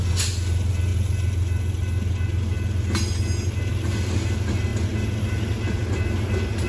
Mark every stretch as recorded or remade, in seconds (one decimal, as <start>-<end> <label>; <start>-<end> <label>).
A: 0.0-6.7 recorded